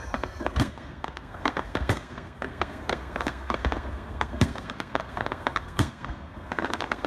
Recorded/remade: remade